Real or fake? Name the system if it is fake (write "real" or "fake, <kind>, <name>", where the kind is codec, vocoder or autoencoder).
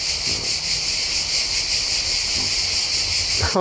real